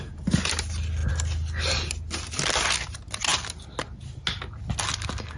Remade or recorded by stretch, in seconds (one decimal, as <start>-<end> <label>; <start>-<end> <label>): 0.0-5.4 recorded